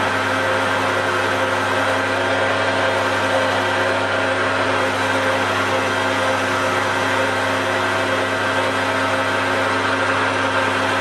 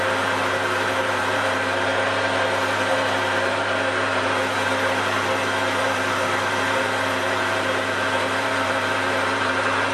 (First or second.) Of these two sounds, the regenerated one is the second